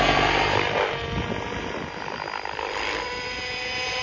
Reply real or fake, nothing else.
fake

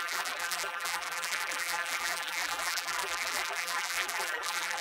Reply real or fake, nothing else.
fake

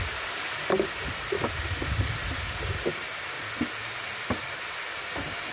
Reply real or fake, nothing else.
real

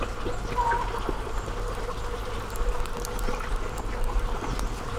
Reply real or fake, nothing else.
real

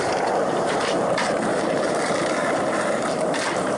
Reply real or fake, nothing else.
fake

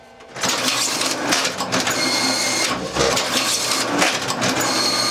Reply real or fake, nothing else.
real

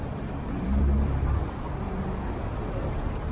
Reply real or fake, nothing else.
fake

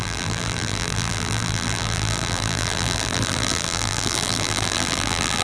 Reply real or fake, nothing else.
fake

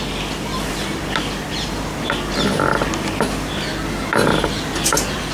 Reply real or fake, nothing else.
real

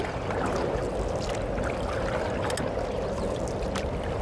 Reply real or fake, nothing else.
real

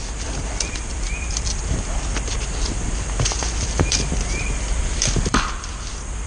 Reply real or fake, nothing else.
fake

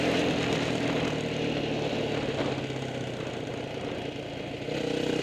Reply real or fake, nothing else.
real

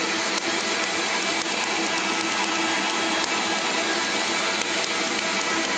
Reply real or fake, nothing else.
real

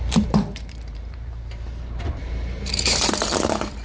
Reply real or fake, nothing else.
fake